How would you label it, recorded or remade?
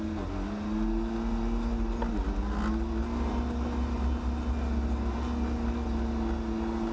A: recorded